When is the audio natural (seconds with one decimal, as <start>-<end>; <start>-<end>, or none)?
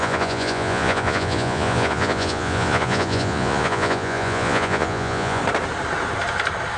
5.4-6.8